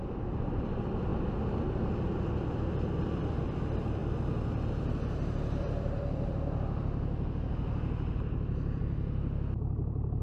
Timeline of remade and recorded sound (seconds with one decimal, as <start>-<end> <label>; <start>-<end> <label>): 0.0-4.0 remade; 4.0-8.8 recorded; 8.8-10.2 remade